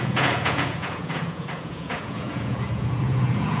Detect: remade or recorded remade